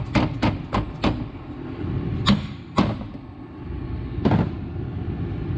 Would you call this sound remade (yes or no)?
no